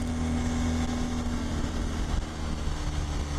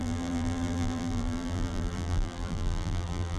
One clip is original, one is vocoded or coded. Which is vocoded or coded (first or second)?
second